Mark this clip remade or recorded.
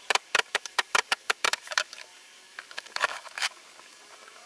remade